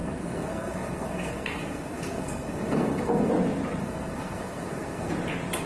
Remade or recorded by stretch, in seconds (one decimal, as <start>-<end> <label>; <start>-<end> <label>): 0.0-3.3 remade; 3.3-3.8 recorded; 3.8-5.1 remade; 5.1-5.7 recorded